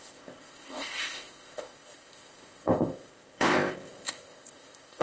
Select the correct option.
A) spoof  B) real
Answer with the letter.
A